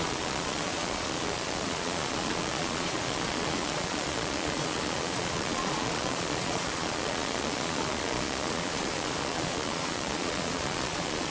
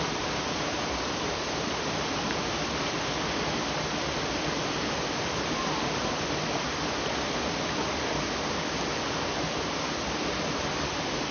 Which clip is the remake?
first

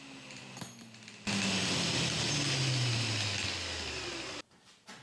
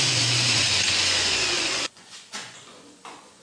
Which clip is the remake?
second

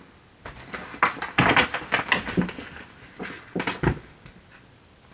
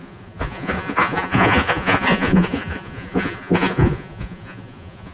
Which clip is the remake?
second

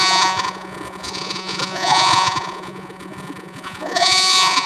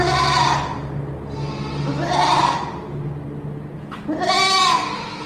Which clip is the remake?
first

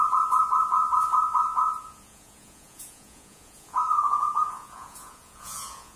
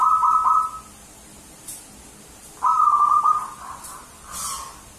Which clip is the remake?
first